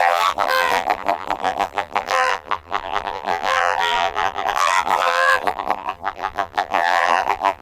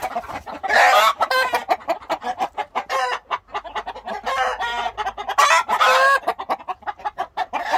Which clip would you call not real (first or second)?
first